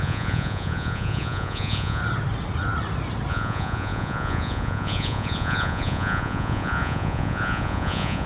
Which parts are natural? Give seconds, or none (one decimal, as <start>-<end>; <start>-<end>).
2.0-3.3